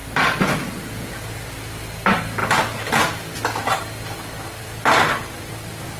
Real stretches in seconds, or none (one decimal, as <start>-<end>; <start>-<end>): 0.0-6.0

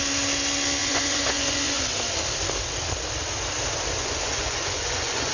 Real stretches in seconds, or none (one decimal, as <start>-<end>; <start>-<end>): 0.0-0.8; 1.8-4.0

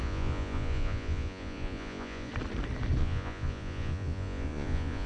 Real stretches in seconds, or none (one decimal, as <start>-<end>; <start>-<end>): 2.3-3.0

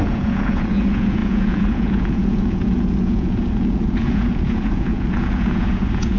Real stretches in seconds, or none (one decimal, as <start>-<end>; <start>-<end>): none

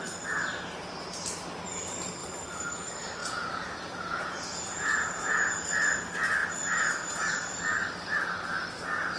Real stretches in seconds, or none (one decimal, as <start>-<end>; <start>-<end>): 0.0-3.2; 5.7-9.2

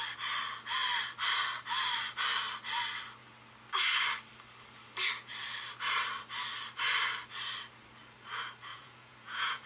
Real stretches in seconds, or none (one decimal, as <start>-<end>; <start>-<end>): 0.0-8.7